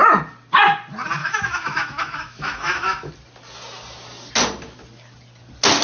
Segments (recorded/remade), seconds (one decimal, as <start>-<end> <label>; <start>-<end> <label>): 0.0-1.2 recorded; 1.2-3.1 remade; 3.1-5.8 recorded

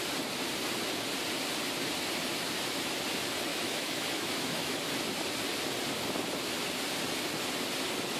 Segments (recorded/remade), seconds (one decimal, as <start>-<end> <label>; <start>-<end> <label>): 0.0-3.5 recorded; 3.5-4.9 remade; 4.9-8.2 recorded

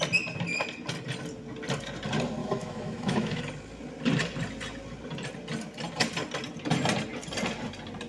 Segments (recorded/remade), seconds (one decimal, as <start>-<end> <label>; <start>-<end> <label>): 0.0-2.4 recorded; 2.4-3.4 remade; 3.4-8.1 recorded